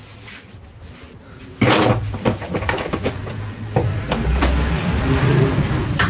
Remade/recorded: remade